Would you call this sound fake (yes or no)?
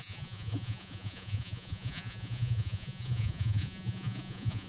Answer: yes